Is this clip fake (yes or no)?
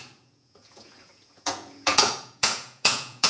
yes